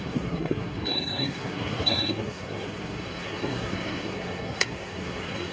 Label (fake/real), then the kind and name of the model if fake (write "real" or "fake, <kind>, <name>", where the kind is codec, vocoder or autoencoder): fake, codec, SNAC